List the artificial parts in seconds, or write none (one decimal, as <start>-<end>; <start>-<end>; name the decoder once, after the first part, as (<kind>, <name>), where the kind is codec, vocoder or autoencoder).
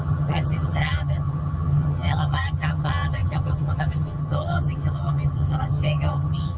0.0-6.6 (vocoder, HiFi-GAN)